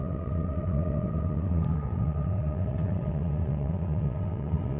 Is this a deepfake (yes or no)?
yes